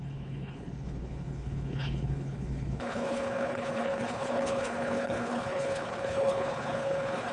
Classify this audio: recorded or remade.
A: remade